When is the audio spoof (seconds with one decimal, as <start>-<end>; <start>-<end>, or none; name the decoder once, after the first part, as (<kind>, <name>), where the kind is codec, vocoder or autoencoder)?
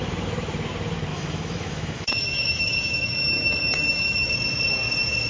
1.1-4.3 (autoencoder, DAC-VAE)